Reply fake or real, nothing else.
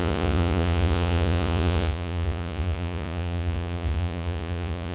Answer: fake